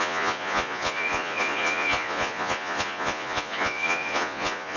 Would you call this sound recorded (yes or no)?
no